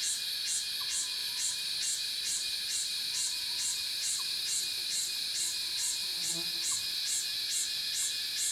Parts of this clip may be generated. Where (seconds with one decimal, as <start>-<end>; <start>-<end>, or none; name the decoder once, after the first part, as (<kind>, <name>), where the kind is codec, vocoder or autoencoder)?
1.2-6.3 (vocoder, BigVGAN v2)